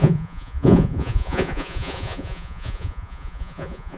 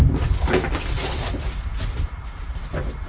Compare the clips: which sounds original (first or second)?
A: second